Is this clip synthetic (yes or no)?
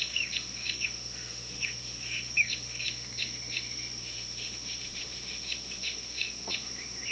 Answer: yes